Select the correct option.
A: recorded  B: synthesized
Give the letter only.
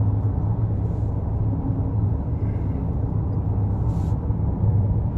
A